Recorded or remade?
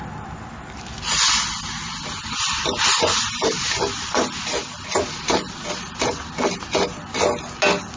recorded